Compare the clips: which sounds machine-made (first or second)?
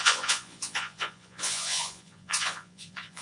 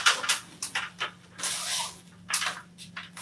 first